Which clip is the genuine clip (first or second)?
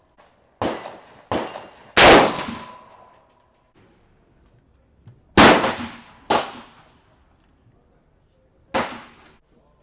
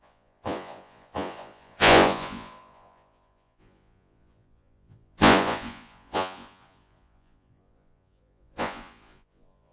first